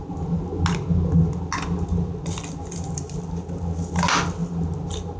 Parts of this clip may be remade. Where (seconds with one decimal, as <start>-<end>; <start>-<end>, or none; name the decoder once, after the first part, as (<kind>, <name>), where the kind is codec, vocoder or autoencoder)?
none

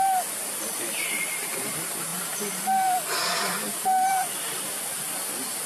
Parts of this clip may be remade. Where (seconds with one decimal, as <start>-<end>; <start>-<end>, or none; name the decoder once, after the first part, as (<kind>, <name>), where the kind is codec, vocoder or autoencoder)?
none

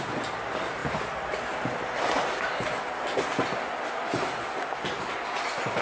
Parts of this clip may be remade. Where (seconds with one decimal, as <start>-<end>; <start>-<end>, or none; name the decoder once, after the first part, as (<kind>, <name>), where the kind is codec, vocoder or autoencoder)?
none

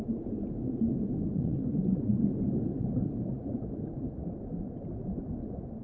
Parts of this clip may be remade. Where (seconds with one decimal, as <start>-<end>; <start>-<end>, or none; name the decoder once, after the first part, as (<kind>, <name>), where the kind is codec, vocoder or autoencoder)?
1.3-2.1 (vocoder, Vocos)

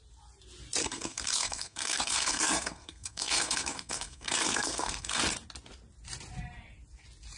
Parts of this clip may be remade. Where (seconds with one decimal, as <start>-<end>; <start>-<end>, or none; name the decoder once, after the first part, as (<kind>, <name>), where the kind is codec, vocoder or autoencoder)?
0.8-5.2 (codec, SNAC)

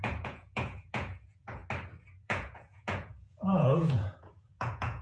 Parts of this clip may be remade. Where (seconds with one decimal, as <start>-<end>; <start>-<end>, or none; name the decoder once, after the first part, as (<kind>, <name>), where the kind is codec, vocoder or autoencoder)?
0.0-1.6 (vocoder, Vocos); 2.2-5.0